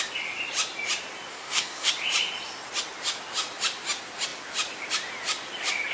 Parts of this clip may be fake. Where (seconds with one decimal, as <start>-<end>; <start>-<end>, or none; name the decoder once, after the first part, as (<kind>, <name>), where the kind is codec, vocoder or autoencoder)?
1.3-1.9 (codec, SNAC)